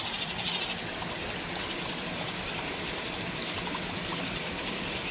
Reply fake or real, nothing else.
real